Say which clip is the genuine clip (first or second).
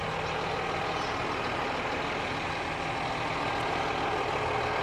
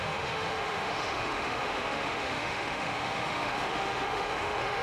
first